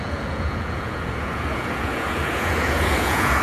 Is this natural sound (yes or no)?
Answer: no